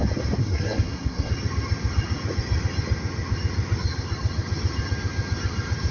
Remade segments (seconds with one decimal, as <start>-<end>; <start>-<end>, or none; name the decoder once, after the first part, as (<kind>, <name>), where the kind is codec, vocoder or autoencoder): 0.4-1.3 (codec, SNAC)